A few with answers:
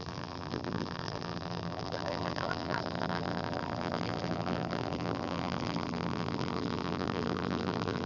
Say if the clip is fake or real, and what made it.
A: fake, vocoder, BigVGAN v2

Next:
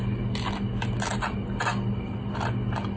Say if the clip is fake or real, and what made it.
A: real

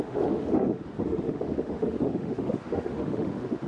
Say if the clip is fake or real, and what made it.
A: fake, autoencoder, DAC-VAE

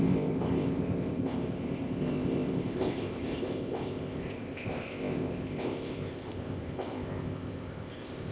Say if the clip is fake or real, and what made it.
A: fake, codec, ZipCodec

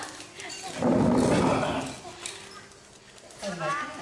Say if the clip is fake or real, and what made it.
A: real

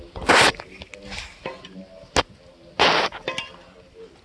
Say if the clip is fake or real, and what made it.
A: real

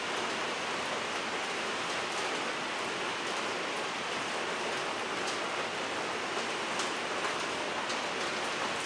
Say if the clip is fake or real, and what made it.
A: real